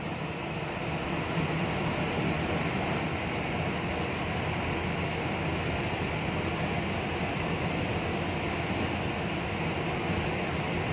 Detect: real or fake real